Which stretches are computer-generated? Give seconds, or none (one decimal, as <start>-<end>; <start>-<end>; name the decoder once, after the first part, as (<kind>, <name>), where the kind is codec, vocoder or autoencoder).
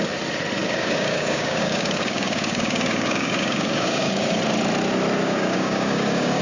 0.6-4.4 (codec, DAC); 5.2-6.4